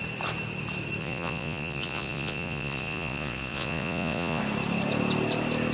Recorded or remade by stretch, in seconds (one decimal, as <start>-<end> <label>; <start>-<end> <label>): 0.0-1.0 recorded; 1.0-4.4 remade; 4.4-5.7 recorded